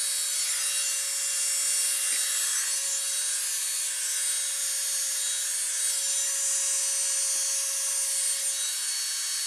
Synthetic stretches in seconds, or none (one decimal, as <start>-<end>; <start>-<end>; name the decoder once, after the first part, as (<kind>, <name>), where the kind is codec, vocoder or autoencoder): none